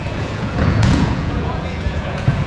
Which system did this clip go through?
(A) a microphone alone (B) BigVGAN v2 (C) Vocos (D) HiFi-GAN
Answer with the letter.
C